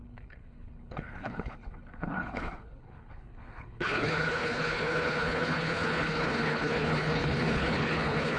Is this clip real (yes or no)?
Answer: no